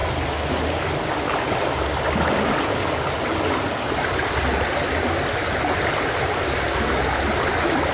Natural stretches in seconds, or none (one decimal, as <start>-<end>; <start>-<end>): 0.0-7.9